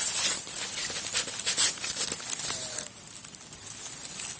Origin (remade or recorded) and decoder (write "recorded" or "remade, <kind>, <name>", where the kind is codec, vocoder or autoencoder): recorded